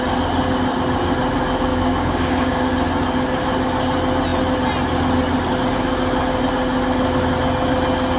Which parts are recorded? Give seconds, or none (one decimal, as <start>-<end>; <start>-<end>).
0.0-1.7; 2.7-8.2